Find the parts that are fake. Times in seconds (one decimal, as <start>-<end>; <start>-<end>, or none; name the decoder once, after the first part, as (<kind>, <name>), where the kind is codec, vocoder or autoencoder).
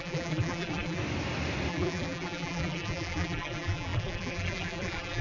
0.0-1.0 (vocoder, BigVGAN v2); 1.7-5.2